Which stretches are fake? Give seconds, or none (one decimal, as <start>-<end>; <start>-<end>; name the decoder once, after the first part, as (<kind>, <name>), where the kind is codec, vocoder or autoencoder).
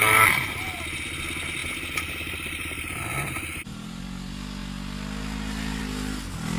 1.6-3.0 (vocoder, BigVGAN v2)